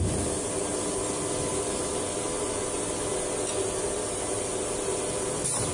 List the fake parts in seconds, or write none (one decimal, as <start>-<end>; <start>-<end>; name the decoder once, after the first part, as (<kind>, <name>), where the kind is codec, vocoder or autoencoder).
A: none